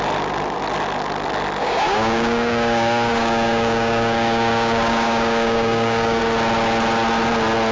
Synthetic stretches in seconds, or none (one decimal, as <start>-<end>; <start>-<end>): 1.6-6.2